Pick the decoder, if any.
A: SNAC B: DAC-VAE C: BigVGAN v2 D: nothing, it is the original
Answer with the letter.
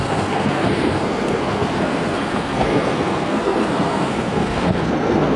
A